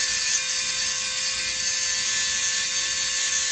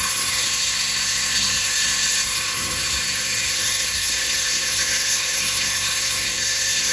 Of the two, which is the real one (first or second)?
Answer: first